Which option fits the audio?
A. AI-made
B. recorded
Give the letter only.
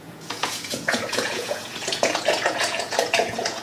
A